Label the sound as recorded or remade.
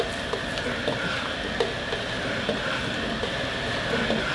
recorded